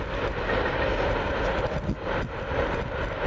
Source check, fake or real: real